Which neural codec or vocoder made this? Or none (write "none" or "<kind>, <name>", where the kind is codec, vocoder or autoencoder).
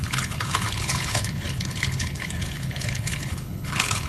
codec, HILCodec